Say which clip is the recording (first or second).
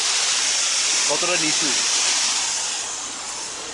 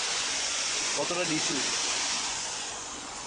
first